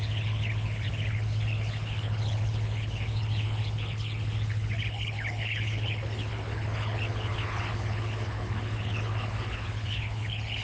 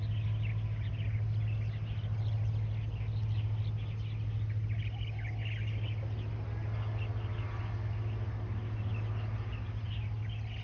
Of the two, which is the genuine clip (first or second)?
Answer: second